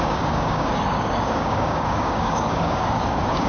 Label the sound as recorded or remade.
remade